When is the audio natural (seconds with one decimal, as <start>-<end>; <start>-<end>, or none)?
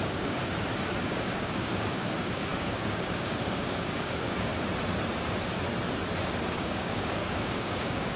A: 0.4-1.0; 4.5-6.5